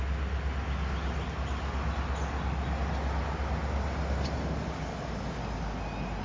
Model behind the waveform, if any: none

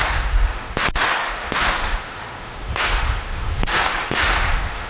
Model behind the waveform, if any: autoencoder, DAC-VAE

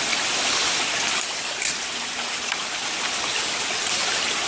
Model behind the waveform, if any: none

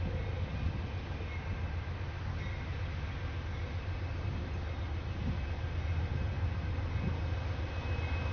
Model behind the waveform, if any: none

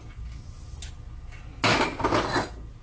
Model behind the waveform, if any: none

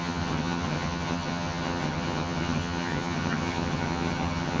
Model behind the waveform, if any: vocoder, HiFi-GAN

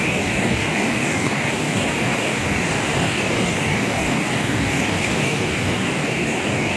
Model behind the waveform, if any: codec, DAC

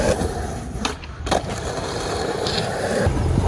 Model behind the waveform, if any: vocoder, BigVGAN v2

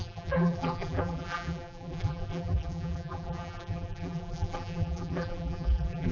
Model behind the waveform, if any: vocoder, BigVGAN v2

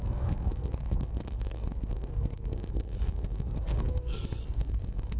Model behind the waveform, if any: codec, SNAC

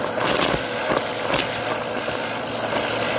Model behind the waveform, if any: none